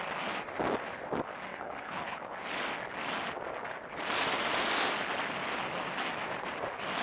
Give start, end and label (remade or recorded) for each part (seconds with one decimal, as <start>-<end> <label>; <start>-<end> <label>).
0.0-1.5 recorded; 1.5-2.2 remade; 2.2-7.0 recorded